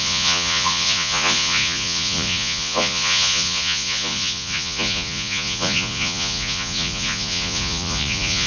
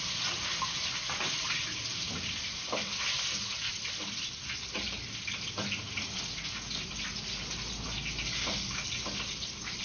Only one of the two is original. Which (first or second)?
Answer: second